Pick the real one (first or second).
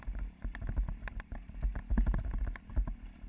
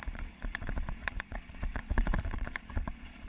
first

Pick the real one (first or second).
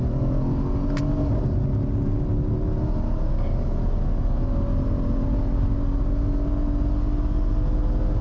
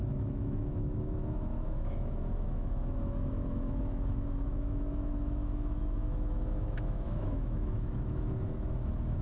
first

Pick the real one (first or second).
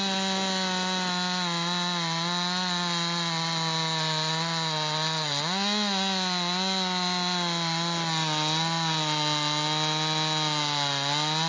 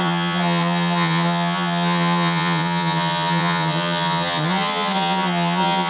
first